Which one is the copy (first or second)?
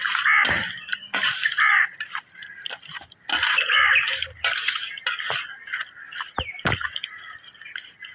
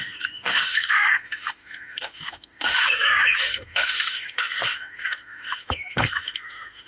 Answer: second